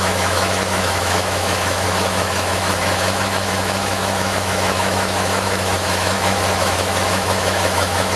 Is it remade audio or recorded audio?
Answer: remade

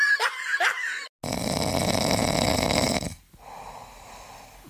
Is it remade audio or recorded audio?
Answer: recorded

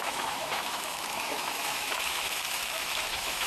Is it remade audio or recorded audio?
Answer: remade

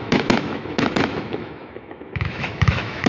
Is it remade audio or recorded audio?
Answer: remade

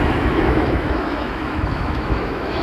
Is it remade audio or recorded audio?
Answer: remade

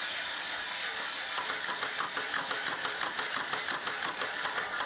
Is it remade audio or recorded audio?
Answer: recorded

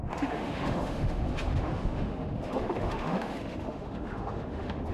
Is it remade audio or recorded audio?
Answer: remade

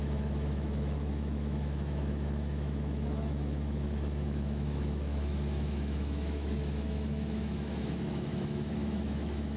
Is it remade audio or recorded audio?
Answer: remade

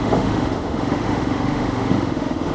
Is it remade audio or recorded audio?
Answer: remade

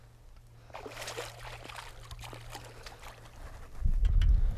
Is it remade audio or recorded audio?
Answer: recorded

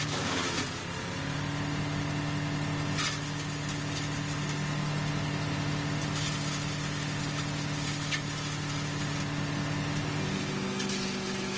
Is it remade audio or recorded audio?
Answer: recorded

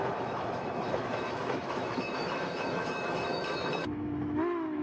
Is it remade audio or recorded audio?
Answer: remade